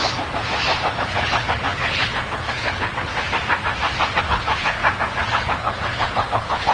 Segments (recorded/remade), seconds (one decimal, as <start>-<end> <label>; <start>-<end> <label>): 0.0-0.9 recorded; 0.9-3.1 remade; 3.1-4.2 recorded; 4.2-4.8 remade; 4.8-5.3 recorded; 5.3-6.7 remade